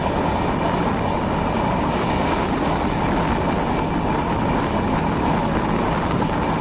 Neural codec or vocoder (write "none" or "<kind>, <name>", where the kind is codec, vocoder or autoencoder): none